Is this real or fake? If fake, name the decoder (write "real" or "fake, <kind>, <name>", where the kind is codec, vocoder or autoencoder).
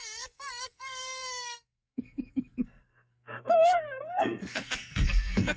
fake, codec, SNAC